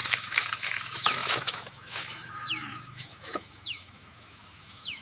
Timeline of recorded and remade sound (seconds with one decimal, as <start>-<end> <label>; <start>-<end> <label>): 0.0-5.0 remade